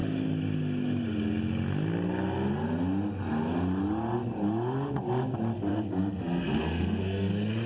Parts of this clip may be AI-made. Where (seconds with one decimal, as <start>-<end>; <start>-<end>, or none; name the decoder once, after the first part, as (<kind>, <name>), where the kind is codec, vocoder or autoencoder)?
5.7-7.3 (codec, SNAC)

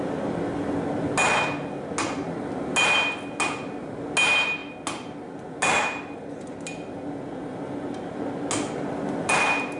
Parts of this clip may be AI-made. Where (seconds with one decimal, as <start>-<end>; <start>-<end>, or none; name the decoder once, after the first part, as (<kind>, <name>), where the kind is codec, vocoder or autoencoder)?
none

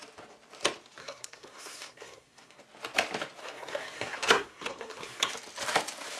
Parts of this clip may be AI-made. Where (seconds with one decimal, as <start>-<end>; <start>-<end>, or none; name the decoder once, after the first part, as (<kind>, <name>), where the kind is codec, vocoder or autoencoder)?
1.0-2.6 (codec, SNAC); 3.4-5.3

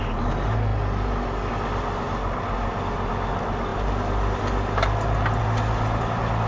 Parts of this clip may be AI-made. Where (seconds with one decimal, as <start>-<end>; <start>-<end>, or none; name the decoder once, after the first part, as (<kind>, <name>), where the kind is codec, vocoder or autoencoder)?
none